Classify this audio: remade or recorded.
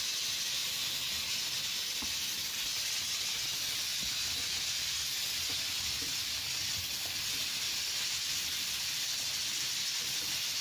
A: recorded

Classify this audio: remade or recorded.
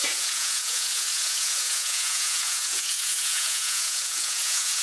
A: remade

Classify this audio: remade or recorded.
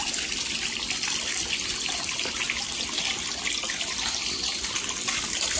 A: recorded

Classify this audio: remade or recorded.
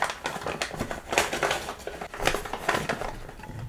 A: recorded